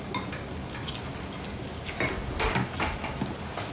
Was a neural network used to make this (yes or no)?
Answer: no